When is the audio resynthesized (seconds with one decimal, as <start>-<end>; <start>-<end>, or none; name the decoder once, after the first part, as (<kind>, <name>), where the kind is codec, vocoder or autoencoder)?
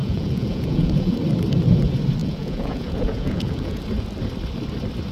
0.0-1.2 (vocoder, Vocos); 2.2-3.8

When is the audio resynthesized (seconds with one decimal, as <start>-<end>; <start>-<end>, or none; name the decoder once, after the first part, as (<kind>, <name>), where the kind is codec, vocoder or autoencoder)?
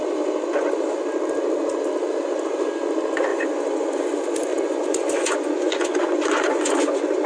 3.3-4.0 (vocoder, Vocos); 4.5-6.7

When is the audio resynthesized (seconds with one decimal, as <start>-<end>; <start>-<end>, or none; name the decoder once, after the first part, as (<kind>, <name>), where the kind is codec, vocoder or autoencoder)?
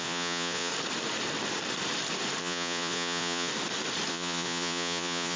0.0-0.7 (vocoder, Vocos); 2.4-3.5; 4.1-5.4